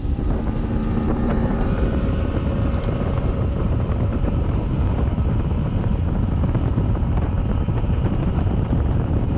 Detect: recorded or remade remade